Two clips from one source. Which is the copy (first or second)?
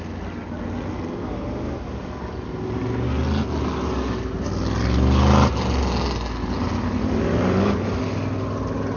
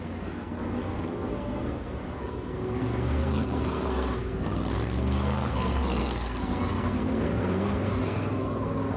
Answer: second